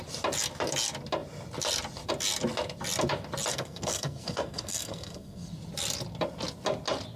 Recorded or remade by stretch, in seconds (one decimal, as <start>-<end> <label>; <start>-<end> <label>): 0.0-3.5 recorded; 3.5-5.5 remade; 5.5-7.2 recorded